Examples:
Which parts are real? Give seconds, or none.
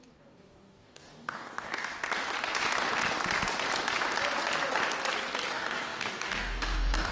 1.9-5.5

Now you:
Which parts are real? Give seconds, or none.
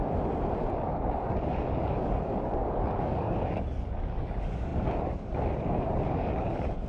0.0-0.6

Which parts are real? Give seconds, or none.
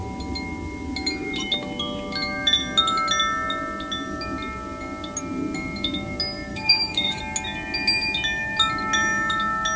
0.0-6.5; 7.2-9.8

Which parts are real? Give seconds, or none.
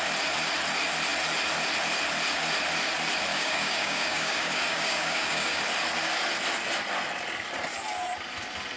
0.0-3.3; 5.6-8.8